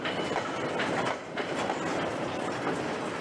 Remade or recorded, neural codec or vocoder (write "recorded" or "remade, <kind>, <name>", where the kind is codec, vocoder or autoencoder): recorded